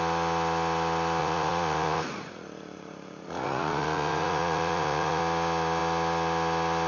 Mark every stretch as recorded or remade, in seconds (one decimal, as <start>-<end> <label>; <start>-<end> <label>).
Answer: 0.0-1.2 recorded; 1.2-5.2 remade; 5.2-6.9 recorded